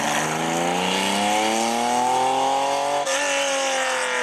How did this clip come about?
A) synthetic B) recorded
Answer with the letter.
B